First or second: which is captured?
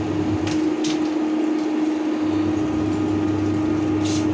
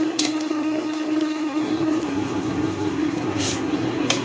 first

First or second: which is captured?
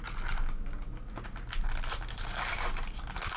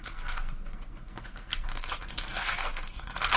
first